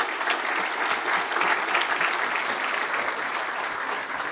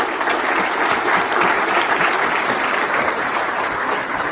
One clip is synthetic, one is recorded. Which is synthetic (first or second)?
second